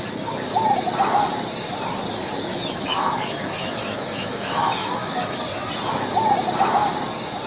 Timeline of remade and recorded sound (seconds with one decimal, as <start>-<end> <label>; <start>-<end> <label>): 0.0-2.2 recorded; 2.2-5.4 remade; 5.4-7.5 recorded

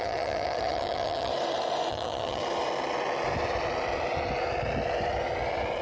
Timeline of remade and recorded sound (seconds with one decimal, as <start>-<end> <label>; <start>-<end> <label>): 0.0-1.3 remade; 1.3-1.9 recorded; 1.9-2.4 remade; 2.4-5.8 recorded

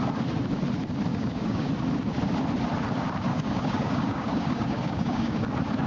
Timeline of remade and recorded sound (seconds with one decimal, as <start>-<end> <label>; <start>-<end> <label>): 0.0-1.1 recorded; 1.1-1.7 remade; 1.7-3.3 recorded; 3.3-5.4 remade; 5.4-5.9 recorded

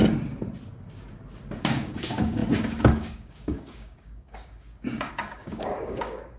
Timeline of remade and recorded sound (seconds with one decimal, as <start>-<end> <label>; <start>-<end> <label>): 0.0-1.6 recorded; 1.6-6.4 remade

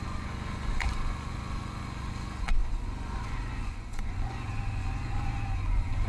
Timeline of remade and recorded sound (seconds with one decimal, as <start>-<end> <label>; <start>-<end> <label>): 0.0-6.1 remade

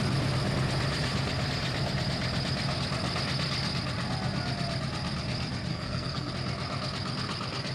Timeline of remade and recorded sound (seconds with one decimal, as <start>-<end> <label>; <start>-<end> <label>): 0.0-5.7 recorded; 5.7-6.3 remade; 6.3-7.7 recorded